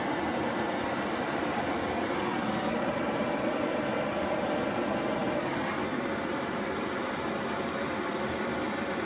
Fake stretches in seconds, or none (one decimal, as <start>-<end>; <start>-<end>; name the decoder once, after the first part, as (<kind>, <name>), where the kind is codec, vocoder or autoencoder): none